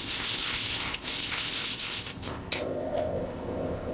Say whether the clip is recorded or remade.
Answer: remade